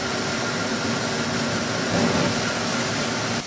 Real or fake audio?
real